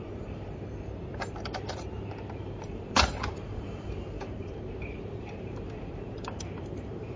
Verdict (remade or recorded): remade